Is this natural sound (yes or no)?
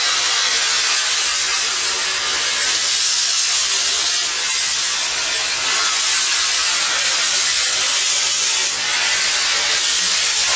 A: yes